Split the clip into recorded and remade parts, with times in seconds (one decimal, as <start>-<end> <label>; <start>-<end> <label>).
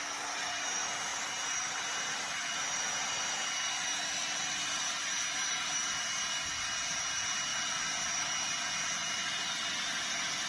0.0-10.5 recorded